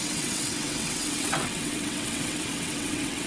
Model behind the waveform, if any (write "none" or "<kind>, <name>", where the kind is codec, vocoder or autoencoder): vocoder, WaveNeXt